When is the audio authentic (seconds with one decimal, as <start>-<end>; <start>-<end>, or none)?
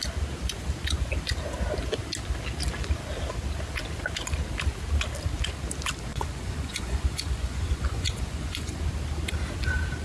0.0-6.1; 8.8-10.0